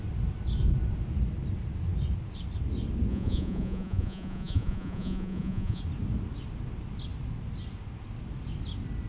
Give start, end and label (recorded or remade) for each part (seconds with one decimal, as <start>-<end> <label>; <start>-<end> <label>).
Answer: 0.0-3.1 recorded; 3.1-5.8 remade; 5.8-9.1 recorded